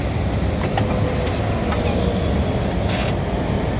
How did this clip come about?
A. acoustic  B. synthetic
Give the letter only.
A